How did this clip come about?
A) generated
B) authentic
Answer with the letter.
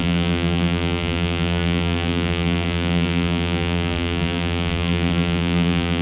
A